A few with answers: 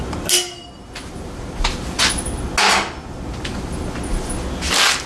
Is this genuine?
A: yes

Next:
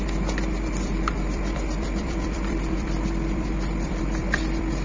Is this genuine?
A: no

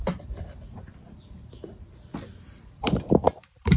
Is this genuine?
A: no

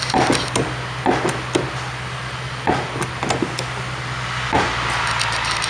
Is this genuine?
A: yes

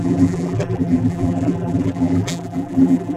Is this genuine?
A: no